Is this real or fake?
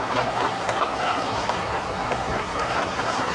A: fake